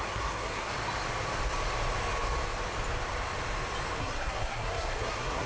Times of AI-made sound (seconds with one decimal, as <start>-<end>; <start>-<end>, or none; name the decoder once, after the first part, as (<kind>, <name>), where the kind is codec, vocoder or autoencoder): 0.0-0.7 (codec, SNAC); 4.0-5.5